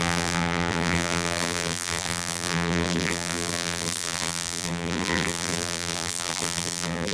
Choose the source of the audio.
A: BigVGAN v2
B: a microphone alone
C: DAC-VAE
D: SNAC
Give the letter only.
A